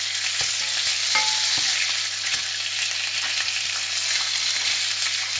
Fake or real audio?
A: real